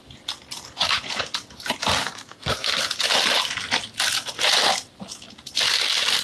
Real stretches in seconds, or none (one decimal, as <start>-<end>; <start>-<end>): 0.0-2.0; 2.7-6.2